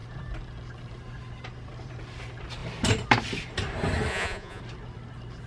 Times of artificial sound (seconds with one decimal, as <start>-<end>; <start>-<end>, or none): 4.1-4.6